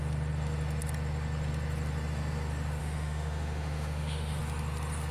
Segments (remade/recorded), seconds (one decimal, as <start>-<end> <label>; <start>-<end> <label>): 0.0-2.8 recorded; 2.8-4.4 remade; 4.4-5.1 recorded